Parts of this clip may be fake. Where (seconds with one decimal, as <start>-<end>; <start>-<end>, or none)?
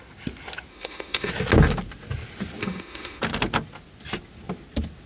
0.7-1.3; 2.6-3.2